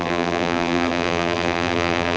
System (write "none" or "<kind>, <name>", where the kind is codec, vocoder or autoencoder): vocoder, BigVGAN v2